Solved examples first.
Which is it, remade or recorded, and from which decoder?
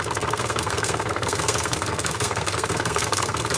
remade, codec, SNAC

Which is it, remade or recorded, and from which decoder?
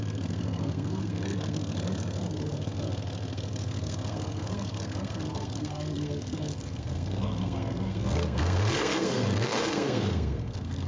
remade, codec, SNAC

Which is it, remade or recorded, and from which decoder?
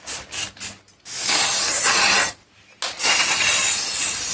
recorded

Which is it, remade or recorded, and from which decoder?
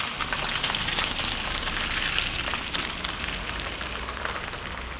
recorded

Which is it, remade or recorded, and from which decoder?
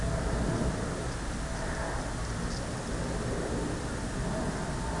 recorded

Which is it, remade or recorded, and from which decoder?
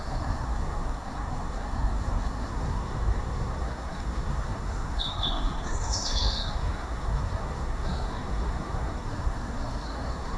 remade, codec, SNAC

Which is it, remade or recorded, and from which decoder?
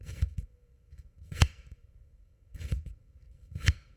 remade, codec, SNAC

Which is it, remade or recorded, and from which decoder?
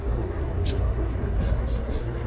remade, codec, SNAC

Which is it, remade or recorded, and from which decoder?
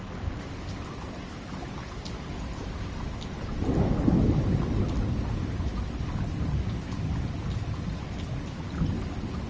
recorded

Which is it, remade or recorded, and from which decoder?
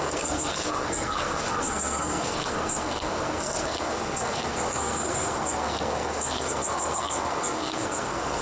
remade, codec, SNAC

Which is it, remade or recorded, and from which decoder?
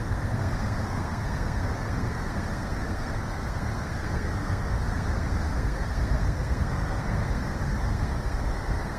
remade, codec, SNAC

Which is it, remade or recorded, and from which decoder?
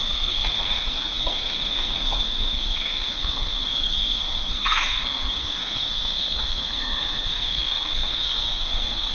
remade, codec, SNAC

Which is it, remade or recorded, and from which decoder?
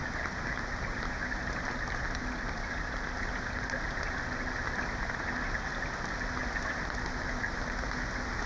recorded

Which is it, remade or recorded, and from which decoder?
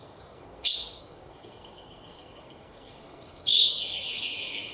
remade, codec, SNAC